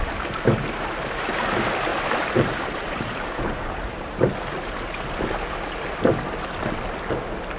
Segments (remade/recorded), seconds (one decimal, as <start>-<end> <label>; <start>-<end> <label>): 0.0-1.9 recorded; 1.9-4.3 remade; 4.3-7.6 recorded